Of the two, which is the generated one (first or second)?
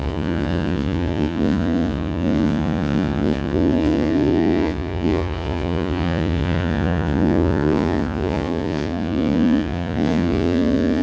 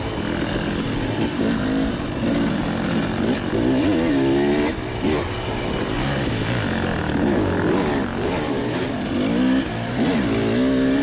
first